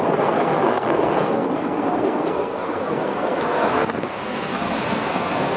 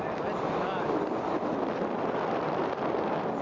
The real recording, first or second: second